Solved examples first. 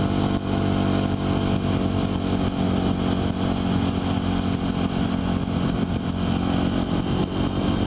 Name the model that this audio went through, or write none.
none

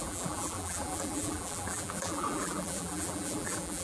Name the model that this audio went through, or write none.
vocoder, BigVGAN v2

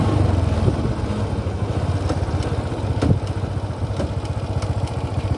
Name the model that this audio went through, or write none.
none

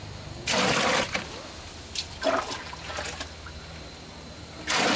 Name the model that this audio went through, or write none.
none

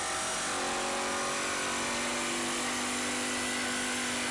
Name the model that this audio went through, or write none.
none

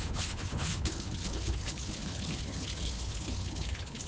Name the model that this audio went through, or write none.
codec, HILCodec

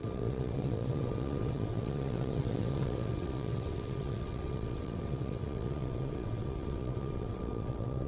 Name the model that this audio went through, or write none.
vocoder, WaveNeXt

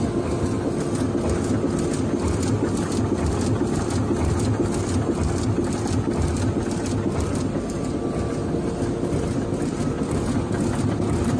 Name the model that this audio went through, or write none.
none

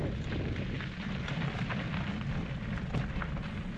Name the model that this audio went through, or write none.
none